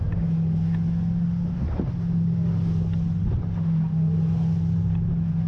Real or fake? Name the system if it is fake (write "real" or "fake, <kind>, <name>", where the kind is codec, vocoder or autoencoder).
real